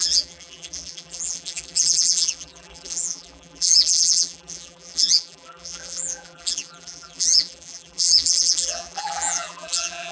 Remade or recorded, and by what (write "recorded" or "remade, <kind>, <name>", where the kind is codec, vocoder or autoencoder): remade, vocoder, BigVGAN v2